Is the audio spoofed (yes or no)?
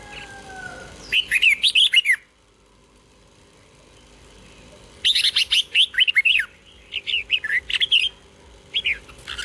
no